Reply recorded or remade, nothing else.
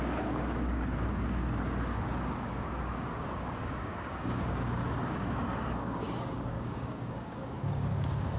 remade